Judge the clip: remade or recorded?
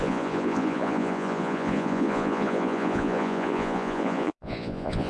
remade